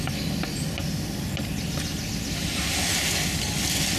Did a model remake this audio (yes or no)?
no